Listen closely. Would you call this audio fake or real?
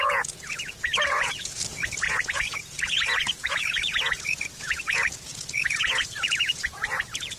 fake